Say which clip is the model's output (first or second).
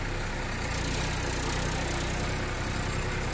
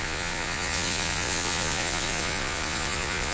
second